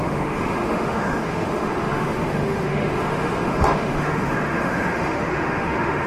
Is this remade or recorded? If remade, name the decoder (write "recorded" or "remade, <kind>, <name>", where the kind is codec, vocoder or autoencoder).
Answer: remade, autoencoder, DAC-VAE